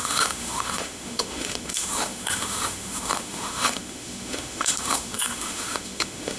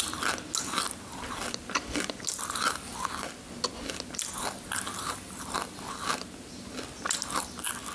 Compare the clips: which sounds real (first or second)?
second